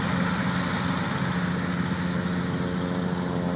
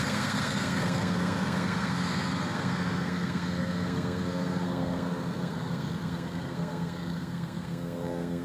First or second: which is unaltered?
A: first